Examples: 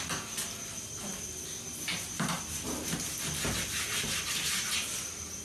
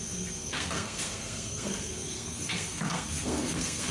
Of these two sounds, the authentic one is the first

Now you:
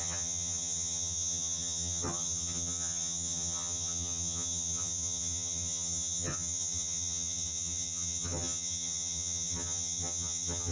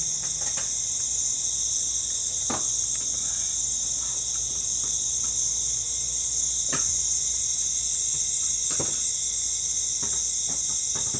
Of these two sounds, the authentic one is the second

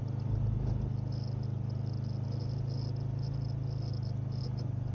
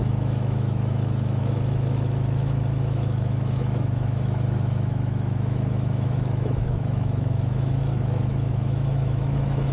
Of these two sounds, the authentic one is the first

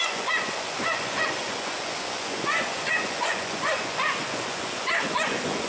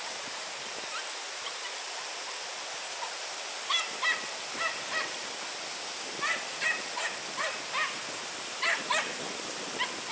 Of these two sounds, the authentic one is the second